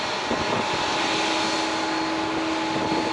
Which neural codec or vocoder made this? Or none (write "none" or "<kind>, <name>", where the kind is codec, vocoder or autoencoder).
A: none